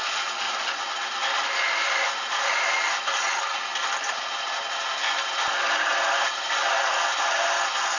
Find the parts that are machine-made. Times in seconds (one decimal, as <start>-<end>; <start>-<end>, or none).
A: none